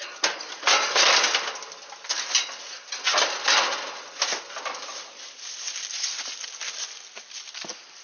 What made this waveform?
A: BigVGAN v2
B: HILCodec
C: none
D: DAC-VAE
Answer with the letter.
C